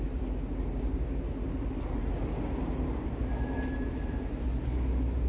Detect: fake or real real